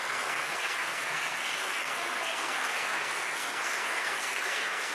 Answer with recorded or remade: remade